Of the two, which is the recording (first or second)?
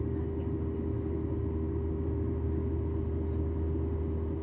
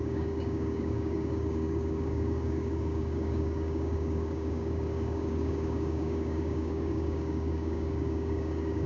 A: first